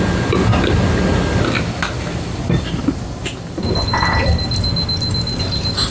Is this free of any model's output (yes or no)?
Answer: yes